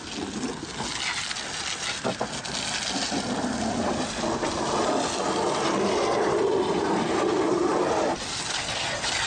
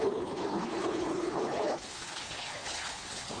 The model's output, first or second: second